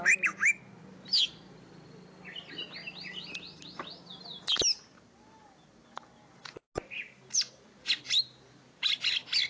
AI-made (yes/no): no